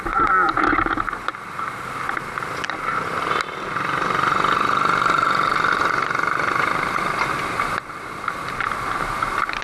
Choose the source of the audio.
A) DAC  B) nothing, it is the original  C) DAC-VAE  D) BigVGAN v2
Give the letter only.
B